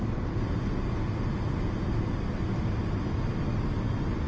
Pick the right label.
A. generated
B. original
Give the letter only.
B